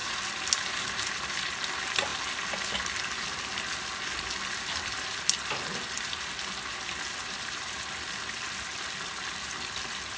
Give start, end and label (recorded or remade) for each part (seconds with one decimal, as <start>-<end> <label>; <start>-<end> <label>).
0.0-10.2 recorded